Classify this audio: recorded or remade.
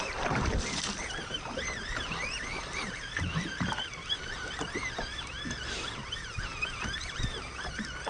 recorded